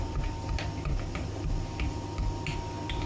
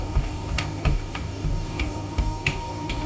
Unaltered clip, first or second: first